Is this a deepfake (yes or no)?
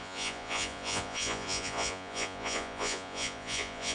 yes